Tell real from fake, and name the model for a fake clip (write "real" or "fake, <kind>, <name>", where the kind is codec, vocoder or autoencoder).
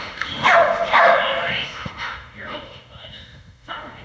fake, autoencoder, DAC-VAE